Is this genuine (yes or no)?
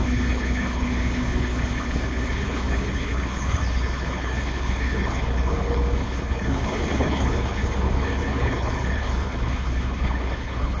no